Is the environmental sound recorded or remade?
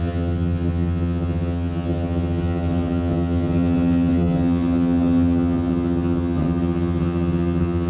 remade